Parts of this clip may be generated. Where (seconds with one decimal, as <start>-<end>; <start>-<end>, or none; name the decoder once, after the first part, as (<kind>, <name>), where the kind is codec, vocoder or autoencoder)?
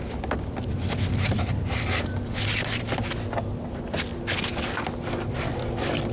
none